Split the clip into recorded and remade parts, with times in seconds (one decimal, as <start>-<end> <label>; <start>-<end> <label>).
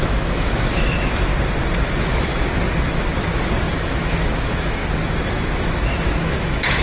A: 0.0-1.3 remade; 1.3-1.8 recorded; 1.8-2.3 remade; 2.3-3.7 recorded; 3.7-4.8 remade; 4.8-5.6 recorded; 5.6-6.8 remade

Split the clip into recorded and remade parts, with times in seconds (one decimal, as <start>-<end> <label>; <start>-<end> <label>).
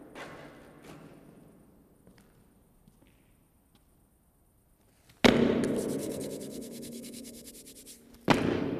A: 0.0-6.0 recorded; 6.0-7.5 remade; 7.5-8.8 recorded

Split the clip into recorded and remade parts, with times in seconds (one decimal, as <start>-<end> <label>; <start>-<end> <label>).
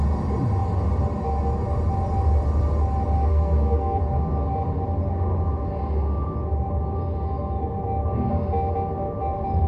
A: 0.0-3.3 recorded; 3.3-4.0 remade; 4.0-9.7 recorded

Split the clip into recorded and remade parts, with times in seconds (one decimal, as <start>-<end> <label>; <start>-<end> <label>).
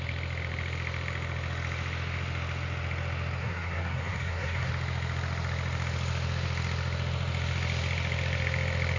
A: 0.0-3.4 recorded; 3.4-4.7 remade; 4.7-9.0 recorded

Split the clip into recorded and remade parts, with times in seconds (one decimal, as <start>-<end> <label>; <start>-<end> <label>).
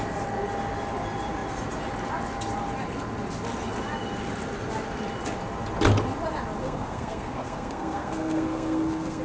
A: 0.0-6.6 recorded; 6.6-9.2 remade